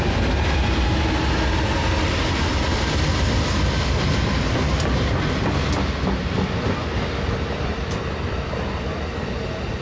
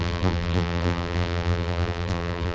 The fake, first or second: second